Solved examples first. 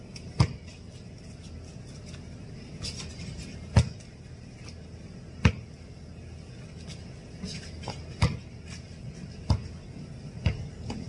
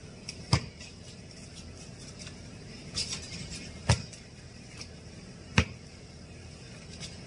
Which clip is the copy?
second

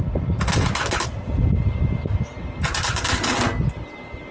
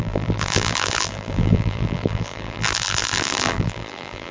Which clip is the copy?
second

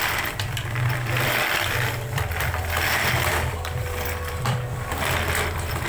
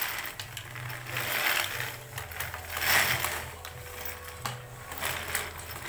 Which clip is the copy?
first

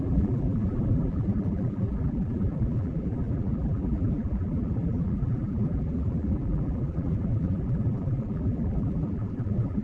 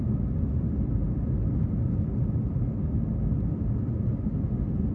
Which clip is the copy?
first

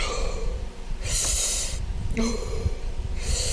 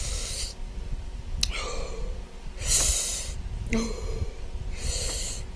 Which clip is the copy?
first